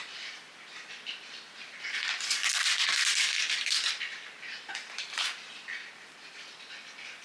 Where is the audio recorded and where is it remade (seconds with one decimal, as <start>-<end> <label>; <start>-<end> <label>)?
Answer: 0.0-7.2 recorded